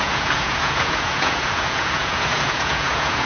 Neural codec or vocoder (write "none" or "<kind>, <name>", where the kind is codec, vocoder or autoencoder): vocoder, Vocos